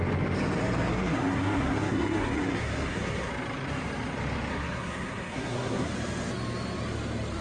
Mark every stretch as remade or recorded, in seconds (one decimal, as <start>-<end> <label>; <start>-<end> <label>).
0.0-0.9 recorded; 0.9-3.3 remade; 3.3-4.5 recorded; 4.5-5.9 remade; 5.9-7.4 recorded